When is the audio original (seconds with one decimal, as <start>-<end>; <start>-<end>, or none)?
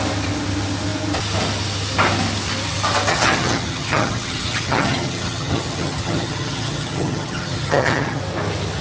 0.0-3.1; 8.2-8.8